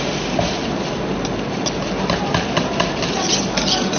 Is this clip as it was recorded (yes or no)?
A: yes